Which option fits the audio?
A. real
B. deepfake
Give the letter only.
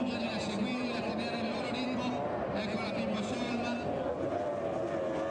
A